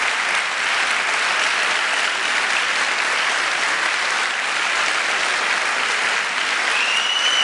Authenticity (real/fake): real